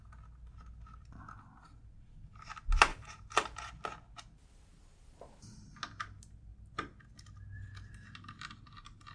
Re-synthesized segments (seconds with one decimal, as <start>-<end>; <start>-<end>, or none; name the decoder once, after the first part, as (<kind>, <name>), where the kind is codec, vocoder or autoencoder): 2.9-3.7 (vocoder, BigVGAN v2)